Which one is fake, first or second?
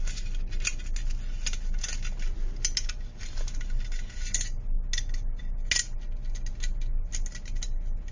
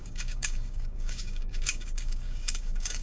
second